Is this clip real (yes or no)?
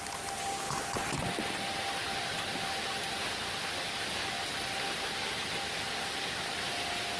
yes